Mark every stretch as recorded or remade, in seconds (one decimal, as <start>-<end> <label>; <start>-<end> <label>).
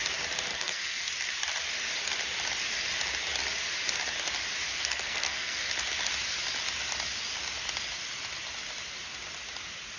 0.0-0.5 recorded; 0.5-1.1 remade; 1.1-4.7 recorded; 4.7-5.7 remade; 5.7-10.0 recorded